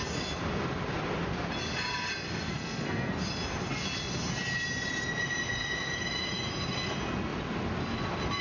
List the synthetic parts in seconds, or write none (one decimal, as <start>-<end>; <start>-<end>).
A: 2.5-3.1